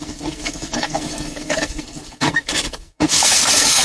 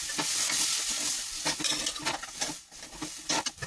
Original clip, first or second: second